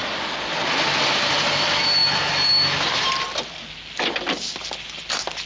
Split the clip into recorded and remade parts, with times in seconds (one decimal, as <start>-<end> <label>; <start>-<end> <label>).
0.0-5.5 recorded